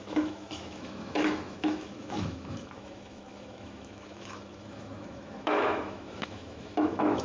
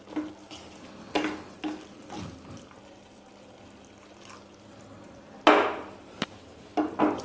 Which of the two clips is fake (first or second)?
first